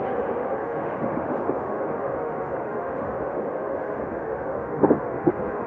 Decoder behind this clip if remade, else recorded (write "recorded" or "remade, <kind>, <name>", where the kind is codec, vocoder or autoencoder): remade, autoencoder, DAC-VAE